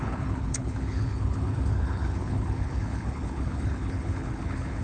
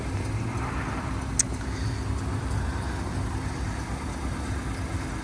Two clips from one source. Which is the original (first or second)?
second